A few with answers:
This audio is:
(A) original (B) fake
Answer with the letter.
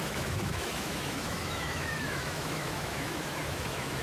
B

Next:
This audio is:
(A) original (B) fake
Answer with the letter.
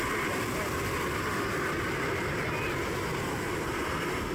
A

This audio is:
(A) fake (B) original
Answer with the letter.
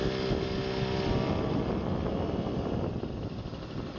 B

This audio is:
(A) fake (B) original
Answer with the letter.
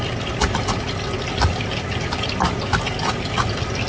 B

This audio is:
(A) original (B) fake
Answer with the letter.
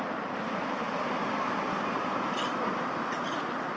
A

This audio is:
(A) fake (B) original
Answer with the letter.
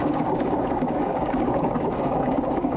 A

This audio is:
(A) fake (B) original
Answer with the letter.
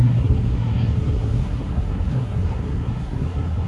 A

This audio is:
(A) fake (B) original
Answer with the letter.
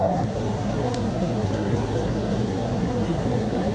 A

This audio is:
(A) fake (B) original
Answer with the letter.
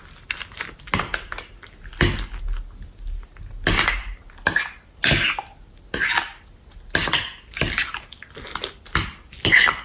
B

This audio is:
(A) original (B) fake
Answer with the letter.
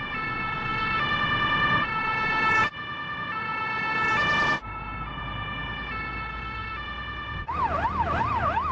A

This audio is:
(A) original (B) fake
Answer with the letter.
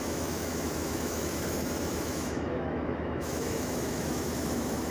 B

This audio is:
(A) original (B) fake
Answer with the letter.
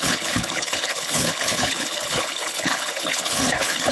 B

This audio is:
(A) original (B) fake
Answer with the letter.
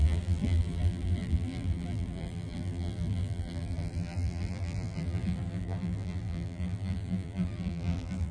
B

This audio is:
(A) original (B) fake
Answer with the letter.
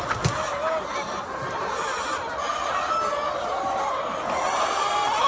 A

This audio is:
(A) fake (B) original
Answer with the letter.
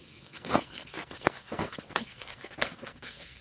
A